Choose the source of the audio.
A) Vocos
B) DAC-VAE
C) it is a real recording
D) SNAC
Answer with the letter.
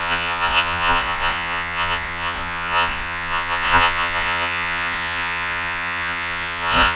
A